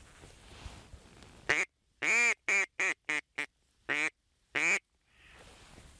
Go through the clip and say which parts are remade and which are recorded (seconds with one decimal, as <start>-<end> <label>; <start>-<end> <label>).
0.0-6.0 recorded